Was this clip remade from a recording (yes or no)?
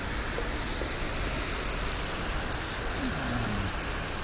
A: no